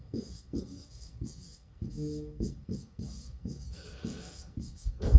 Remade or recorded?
remade